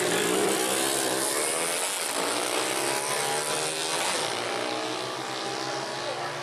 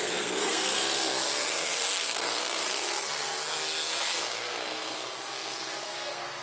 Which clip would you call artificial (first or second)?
second